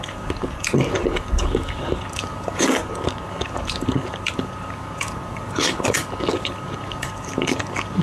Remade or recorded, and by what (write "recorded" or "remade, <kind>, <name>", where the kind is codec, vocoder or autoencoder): remade, codec, DAC